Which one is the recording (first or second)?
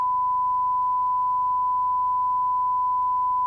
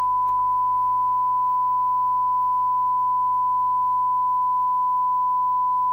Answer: first